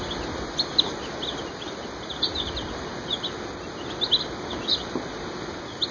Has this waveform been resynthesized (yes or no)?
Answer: no